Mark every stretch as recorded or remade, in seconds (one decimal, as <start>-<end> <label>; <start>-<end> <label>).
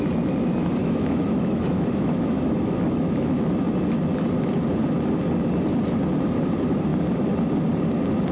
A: 0.0-0.8 recorded; 0.8-3.5 remade; 3.5-8.3 recorded